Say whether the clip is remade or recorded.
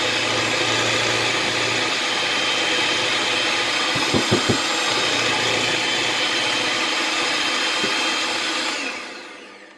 recorded